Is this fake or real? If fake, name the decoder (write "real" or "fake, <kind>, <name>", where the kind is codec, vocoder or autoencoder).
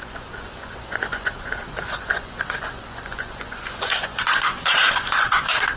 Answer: fake, vocoder, Vocos